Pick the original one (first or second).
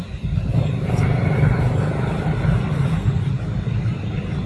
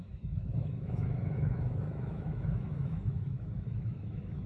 first